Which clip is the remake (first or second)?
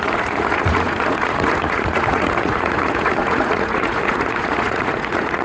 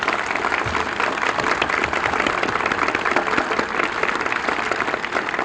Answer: first